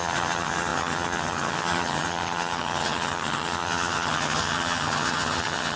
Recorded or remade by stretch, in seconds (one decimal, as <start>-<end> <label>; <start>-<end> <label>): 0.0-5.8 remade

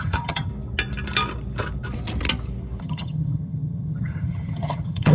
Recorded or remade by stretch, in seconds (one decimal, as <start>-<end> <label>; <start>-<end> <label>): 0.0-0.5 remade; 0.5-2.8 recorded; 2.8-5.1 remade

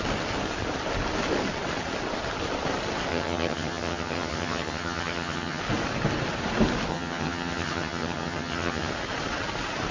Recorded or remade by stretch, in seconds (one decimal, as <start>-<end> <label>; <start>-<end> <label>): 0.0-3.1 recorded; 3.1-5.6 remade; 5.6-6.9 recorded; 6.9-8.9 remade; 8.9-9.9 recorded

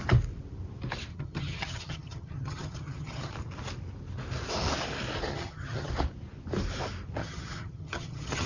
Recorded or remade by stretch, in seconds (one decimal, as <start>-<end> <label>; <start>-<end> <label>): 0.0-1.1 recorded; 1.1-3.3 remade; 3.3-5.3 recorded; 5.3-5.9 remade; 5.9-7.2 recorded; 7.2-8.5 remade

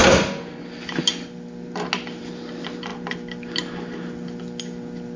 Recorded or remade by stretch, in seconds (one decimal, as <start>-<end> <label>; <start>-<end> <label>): 0.0-5.2 recorded

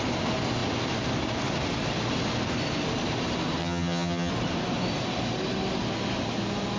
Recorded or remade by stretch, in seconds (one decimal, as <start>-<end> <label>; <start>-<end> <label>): 0.0-3.6 recorded; 3.6-4.3 remade; 4.3-6.8 recorded